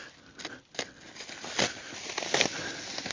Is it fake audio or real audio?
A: real